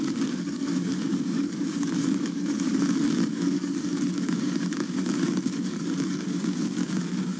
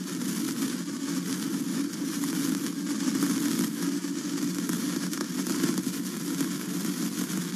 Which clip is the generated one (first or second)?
first